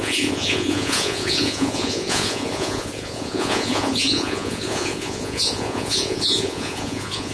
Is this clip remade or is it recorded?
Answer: remade